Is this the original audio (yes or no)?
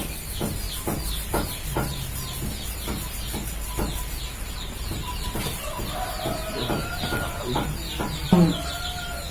yes